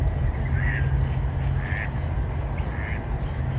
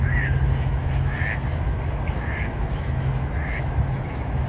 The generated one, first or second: second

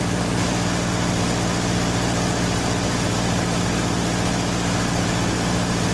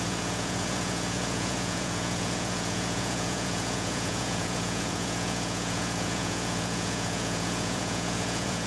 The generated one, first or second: second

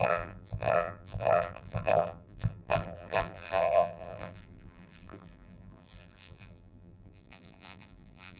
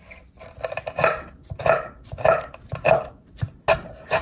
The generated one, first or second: first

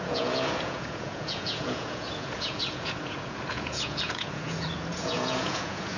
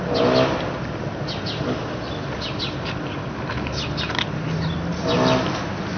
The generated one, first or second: first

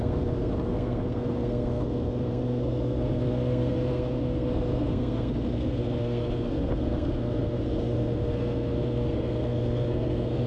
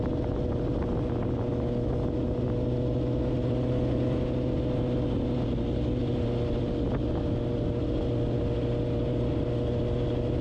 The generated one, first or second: first